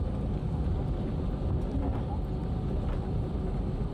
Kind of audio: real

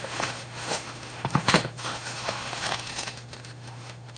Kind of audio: fake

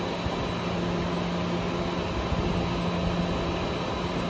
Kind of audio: real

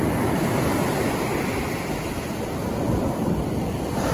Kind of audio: real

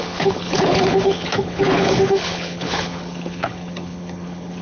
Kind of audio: fake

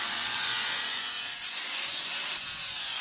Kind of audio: fake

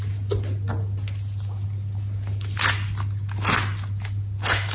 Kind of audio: real